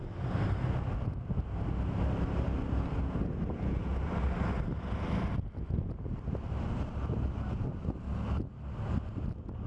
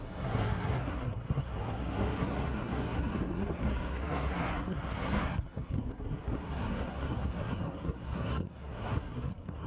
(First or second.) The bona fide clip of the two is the first